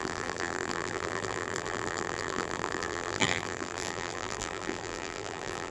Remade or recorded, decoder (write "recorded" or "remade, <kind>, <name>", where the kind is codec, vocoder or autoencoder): remade, vocoder, BigVGAN v2